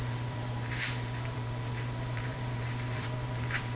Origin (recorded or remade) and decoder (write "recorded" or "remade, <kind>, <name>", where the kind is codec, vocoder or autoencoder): remade, vocoder, BigVGAN v2